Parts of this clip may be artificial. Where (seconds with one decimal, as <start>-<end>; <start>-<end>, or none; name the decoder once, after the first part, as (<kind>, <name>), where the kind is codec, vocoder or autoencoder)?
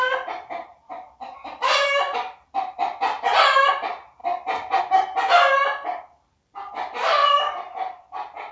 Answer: 0.7-3.7 (vocoder, BigVGAN v2); 7.2-8.5